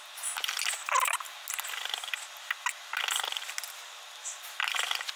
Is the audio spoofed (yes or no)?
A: no